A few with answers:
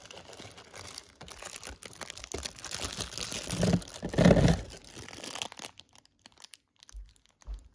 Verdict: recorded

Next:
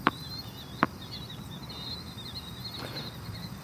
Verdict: recorded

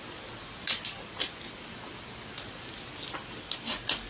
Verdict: recorded